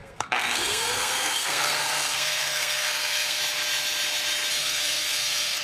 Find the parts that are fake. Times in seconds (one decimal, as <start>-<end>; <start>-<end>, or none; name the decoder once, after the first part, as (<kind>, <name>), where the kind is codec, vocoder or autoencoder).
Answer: 0.0-3.4 (codec, SNAC); 4.6-5.6